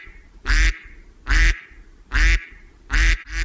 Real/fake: real